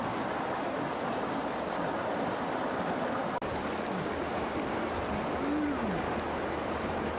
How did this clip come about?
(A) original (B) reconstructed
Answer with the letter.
A